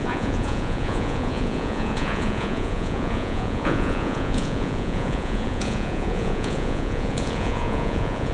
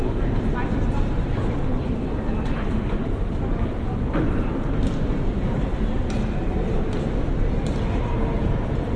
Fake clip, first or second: first